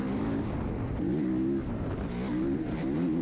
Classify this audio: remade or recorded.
recorded